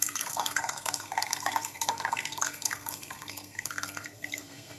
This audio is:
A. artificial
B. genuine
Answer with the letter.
A